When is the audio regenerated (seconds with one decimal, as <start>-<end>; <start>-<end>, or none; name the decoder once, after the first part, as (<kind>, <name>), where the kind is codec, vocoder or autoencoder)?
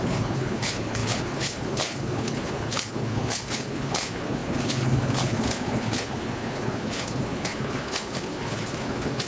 0.0-9.3 (codec, HILCodec)